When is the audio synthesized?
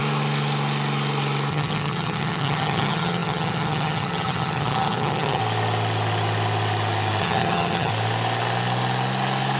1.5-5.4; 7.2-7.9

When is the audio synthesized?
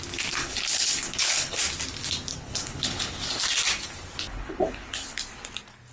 0.4-1.6; 2.3-3.4; 4.3-5.2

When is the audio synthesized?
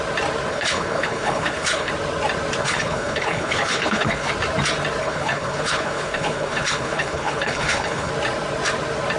0.5-1.9; 2.6-4.3; 5.0-8.1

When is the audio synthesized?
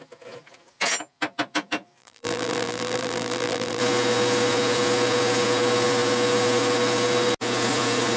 2.0-3.8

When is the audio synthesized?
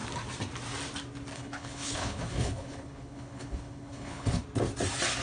1.3-4.4